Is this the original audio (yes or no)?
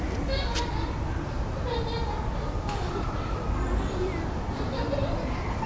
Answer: yes